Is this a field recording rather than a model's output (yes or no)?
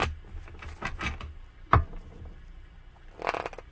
yes